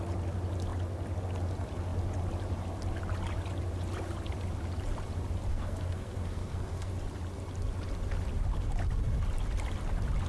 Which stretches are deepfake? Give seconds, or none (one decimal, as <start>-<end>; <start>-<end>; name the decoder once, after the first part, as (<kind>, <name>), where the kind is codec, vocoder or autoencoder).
5.5-6.9 (codec, SNAC)